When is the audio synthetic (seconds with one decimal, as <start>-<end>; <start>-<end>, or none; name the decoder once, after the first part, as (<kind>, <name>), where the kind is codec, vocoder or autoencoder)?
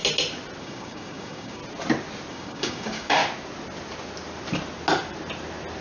0.6-1.6 (codec, DAC); 2.3-3.2